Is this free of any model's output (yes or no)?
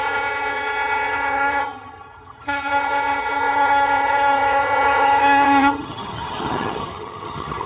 no